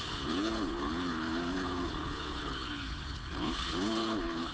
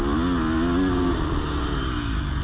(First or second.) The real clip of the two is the second